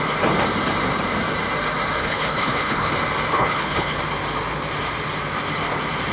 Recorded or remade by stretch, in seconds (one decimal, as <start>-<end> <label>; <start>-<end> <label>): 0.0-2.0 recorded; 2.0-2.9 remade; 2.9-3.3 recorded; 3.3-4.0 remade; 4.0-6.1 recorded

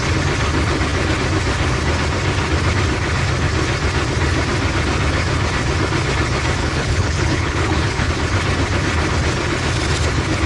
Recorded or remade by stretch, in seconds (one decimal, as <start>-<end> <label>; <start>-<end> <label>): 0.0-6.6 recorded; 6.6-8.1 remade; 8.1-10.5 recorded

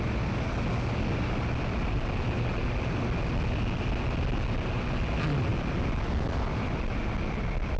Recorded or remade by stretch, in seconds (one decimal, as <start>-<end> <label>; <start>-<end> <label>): 0.0-7.8 recorded